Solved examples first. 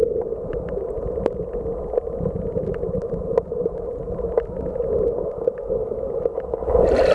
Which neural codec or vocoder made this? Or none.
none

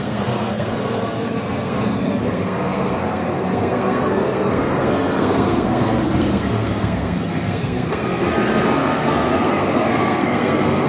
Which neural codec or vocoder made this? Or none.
codec, SNAC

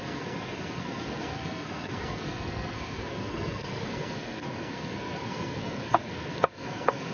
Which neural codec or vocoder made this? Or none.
codec, SNAC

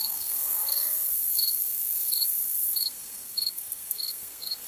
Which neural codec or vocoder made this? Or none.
codec, SNAC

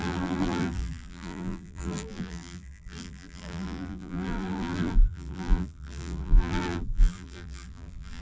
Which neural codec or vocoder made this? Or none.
vocoder, BigVGAN v2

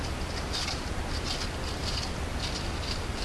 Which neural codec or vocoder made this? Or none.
none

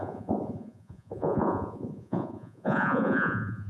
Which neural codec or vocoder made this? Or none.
vocoder, Vocos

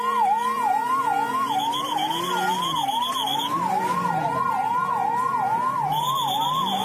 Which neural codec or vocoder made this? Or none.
none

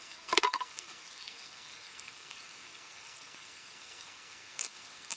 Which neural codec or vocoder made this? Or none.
codec, SNAC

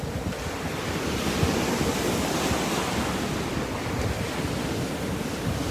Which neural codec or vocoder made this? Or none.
none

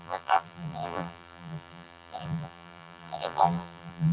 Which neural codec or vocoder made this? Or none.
vocoder, BigVGAN v2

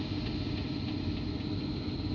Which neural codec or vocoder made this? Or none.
none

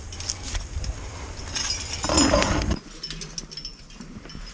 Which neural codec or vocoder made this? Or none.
none